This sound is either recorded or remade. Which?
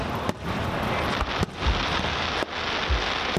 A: recorded